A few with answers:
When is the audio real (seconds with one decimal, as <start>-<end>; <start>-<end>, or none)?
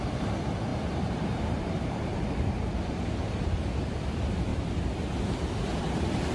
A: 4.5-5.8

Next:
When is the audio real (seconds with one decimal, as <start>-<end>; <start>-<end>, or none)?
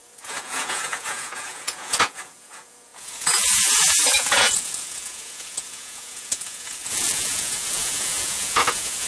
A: none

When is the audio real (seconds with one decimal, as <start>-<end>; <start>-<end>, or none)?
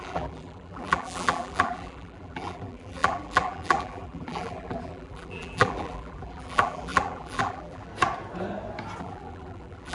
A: 7.9-9.0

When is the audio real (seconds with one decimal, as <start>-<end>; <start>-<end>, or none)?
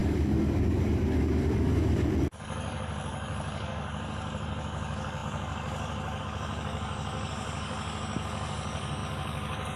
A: none